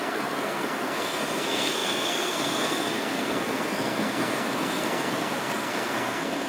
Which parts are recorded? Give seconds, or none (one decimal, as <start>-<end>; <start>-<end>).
none